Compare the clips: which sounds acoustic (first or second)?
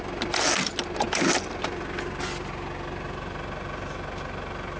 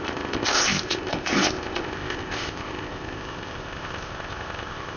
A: first